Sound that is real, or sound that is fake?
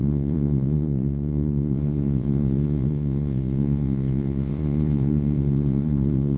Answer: fake